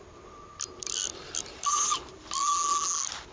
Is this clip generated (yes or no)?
no